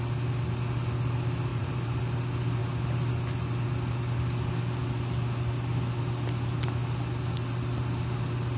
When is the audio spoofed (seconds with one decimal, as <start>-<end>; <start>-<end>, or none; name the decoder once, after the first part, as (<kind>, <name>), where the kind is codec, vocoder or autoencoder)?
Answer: 1.5-2.1 (vocoder, BigVGAN v2)